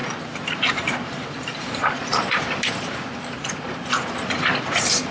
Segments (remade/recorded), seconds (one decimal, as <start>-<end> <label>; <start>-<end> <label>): 0.0-2.1 remade; 2.1-3.5 recorded; 3.5-5.1 remade